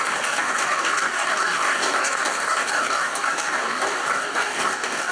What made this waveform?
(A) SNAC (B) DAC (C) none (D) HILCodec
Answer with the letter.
B